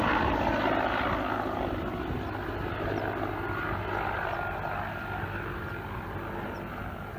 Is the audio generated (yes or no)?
no